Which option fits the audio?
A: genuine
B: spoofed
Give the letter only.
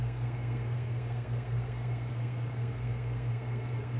B